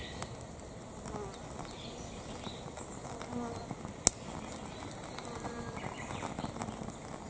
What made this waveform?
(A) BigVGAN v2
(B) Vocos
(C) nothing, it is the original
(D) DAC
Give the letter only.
C